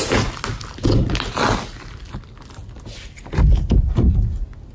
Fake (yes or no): no